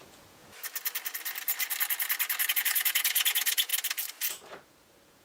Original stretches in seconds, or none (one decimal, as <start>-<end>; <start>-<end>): 0.4-2.5; 3.7-4.3